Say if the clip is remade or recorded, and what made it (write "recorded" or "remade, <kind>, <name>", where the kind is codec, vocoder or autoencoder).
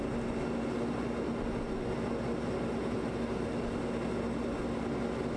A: recorded